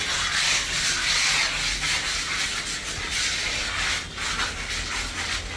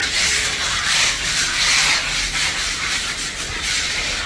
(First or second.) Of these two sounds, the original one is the first